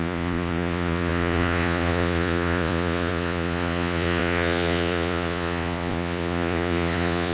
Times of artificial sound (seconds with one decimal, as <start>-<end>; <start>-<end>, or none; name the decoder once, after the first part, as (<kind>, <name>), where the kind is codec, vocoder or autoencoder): 0.0-7.3 (vocoder, Vocos)